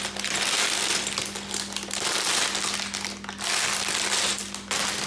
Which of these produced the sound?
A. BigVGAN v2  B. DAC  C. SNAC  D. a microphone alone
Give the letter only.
D